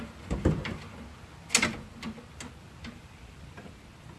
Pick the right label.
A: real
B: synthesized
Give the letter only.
A